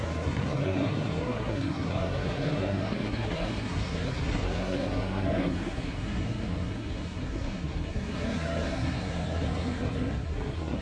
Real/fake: fake